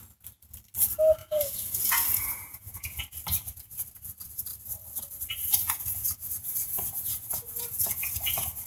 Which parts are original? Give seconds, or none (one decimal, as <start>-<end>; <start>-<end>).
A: 0.0-1.2; 3.0-5.5